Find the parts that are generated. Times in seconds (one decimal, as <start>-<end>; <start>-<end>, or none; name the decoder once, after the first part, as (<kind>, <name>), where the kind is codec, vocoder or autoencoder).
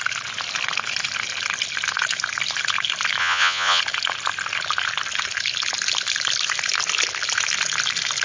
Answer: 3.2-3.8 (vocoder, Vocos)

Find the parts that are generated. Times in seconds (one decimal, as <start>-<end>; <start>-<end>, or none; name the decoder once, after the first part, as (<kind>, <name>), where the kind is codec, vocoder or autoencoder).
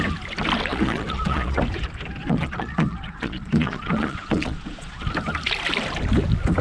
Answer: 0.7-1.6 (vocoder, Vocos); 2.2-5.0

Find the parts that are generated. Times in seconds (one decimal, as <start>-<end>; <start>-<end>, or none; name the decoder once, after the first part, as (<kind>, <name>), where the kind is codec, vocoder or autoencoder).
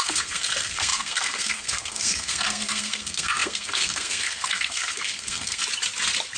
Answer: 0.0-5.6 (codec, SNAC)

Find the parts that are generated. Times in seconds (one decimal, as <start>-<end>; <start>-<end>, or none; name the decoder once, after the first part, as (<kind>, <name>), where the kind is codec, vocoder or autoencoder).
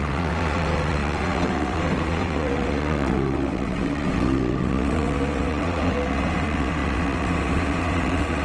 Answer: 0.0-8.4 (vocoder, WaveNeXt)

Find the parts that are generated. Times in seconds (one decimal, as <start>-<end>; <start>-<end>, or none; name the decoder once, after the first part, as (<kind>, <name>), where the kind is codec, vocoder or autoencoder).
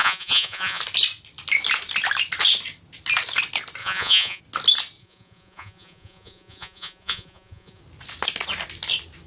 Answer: 0.0-0.8 (vocoder, Vocos); 3.8-4.4; 5.0-7.8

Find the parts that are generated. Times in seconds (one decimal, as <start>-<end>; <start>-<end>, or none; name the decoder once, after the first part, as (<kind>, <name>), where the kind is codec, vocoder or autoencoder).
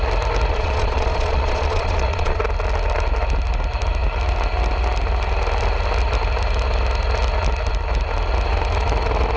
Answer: 0.5-2.4 (vocoder, Vocos)